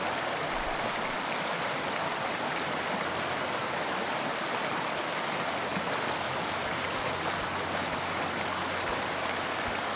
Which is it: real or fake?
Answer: real